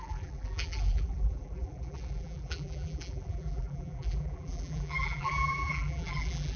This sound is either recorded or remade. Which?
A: remade